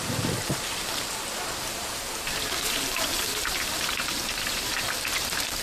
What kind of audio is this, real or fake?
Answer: fake